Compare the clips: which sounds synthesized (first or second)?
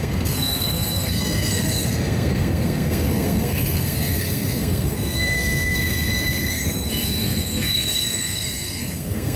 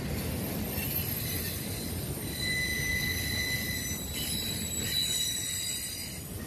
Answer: first